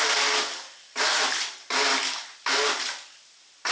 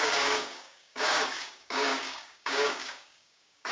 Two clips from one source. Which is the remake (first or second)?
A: second